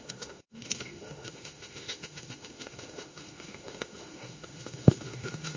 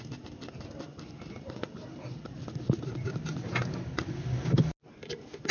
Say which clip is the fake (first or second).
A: first